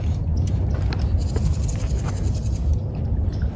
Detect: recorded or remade recorded